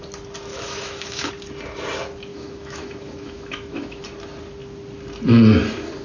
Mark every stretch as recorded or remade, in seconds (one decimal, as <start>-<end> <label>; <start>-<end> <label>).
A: 0.0-0.5 recorded; 0.5-1.3 remade; 1.3-2.3 recorded; 2.3-4.0 remade; 4.0-6.0 recorded